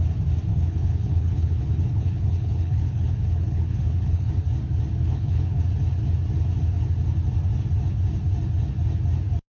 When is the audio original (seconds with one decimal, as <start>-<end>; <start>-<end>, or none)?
0.0-0.5; 4.3-5.0; 5.6-9.6